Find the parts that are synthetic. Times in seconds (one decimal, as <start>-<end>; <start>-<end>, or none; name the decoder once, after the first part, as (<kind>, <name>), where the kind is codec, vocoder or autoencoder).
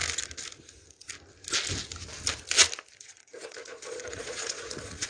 3.0-5.1 (vocoder, Vocos)